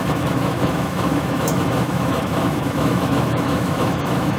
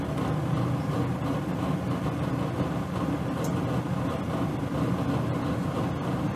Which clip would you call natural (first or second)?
second